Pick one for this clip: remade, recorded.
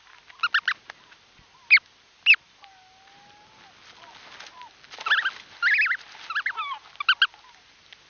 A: recorded